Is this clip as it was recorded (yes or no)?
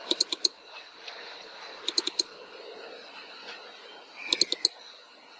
yes